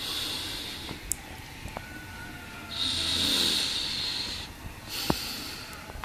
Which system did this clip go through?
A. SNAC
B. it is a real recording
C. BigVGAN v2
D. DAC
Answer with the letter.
B